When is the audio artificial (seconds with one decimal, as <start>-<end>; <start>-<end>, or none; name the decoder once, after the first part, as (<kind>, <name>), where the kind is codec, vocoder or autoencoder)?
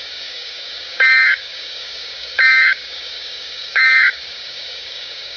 0.0-5.4 (codec, DAC)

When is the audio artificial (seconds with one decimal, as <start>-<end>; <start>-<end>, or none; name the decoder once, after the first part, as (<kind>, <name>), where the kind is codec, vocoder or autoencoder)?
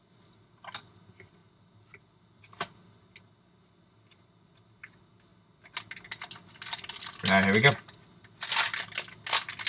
none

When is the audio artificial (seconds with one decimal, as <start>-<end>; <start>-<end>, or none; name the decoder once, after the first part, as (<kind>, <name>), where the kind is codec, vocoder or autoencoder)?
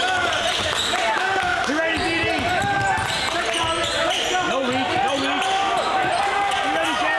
none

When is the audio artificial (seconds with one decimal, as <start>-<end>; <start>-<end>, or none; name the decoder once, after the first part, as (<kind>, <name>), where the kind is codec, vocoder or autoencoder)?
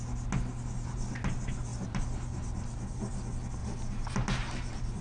1.7-3.1 (vocoder, BigVGAN v2); 3.6-5.0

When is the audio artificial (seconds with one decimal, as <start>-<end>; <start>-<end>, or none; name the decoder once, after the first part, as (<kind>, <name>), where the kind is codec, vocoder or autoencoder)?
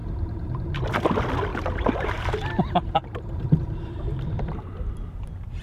0.0-0.7 (vocoder, BigVGAN v2); 1.5-3.9